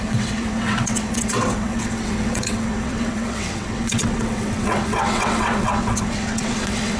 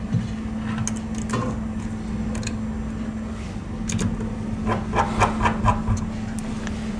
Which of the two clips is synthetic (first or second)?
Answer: first